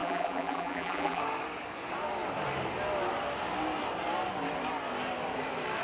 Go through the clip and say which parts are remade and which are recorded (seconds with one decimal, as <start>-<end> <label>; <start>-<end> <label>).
0.0-1.2 remade; 1.2-5.8 recorded